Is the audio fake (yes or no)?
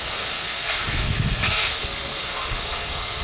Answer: yes